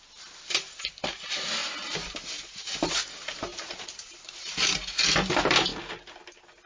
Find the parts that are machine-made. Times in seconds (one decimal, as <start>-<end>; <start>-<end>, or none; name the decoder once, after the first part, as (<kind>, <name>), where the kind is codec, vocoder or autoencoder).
1.6-2.3 (vocoder, BigVGAN v2); 3.5-4.5